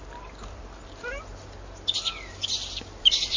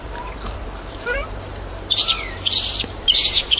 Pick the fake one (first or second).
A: second